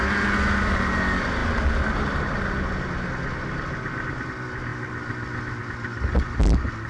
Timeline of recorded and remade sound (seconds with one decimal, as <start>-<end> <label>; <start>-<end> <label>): 0.0-6.9 recorded